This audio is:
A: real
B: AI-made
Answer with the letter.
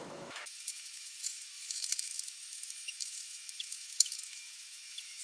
B